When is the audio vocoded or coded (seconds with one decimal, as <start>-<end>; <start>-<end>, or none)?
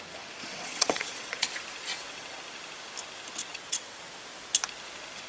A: 0.5-1.5; 1.9-2.4; 3.4-4.1